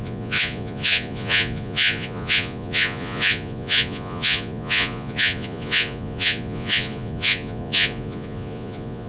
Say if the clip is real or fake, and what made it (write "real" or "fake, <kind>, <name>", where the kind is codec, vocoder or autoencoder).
fake, vocoder, Vocos